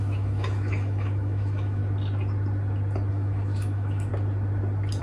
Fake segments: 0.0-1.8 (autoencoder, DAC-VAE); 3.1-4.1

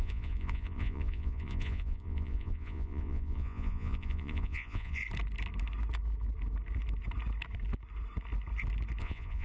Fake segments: 0.0-5.0 (vocoder, Vocos); 9.0-9.4

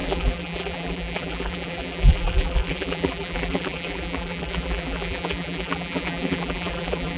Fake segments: 0.0-7.2 (vocoder, BigVGAN v2)

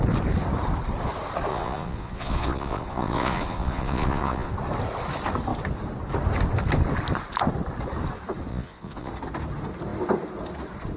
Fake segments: 1.5-4.5 (vocoder, Vocos); 8.5-9.1

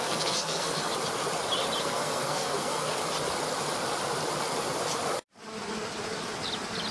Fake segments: 0.0-0.9 (codec, SNAC); 1.8-3.0

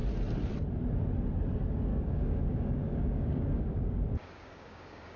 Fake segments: 1.9-5.2 (codec, DAC)

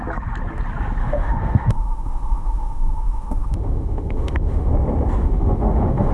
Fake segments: 1.0-4.7 (autoencoder, DAC-VAE); 5.2-6.1